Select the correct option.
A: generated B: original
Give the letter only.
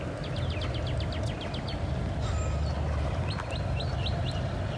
B